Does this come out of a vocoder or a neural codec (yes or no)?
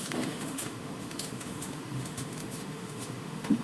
yes